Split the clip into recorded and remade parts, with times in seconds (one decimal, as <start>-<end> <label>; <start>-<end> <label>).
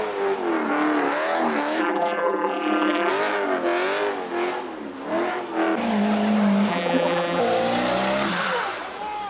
0.0-1.8 recorded; 1.8-3.1 remade; 3.1-6.7 recorded; 6.7-7.4 remade; 7.4-9.3 recorded